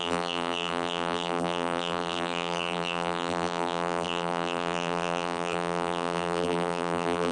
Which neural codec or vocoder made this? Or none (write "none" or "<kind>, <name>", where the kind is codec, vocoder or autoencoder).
vocoder, BigVGAN v2